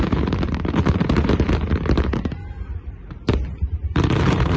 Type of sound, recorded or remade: remade